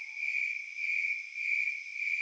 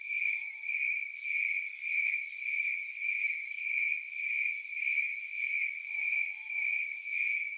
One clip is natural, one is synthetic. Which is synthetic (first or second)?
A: second